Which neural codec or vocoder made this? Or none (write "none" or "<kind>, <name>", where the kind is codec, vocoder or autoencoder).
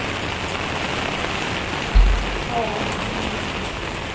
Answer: none